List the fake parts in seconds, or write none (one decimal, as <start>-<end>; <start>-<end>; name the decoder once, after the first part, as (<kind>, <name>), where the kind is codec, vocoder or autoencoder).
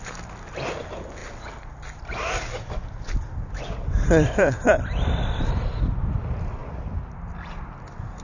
1.2-5.4 (vocoder, BigVGAN v2)